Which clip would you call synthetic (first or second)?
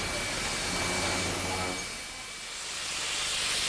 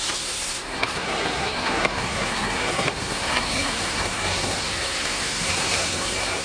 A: second